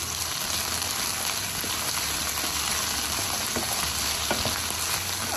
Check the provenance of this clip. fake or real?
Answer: real